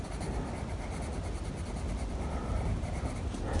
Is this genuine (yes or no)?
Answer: yes